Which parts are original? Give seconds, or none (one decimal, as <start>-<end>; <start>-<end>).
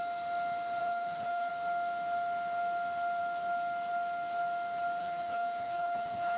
0.0-0.8; 1.5-5.0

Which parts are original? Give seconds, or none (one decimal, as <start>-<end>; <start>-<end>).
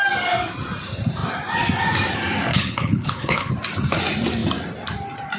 0.0-2.5; 3.5-5.4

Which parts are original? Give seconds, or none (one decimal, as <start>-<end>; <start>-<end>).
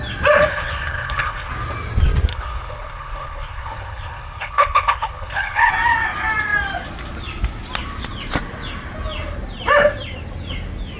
0.0-0.5; 1.5-2.3; 5.7-11.0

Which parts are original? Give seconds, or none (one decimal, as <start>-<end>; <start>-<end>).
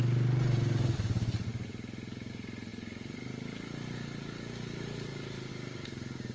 0.0-6.3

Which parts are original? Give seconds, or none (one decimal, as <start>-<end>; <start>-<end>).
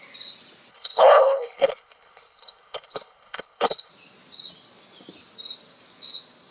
0.0-0.7; 3.9-6.5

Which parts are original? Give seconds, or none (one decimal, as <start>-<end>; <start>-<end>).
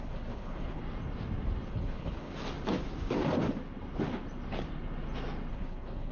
0.8-1.7; 2.3-5.5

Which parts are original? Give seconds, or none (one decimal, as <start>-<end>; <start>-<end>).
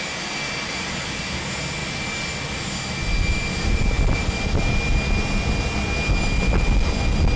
0.0-7.4